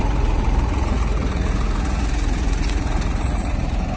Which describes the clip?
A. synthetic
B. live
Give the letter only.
A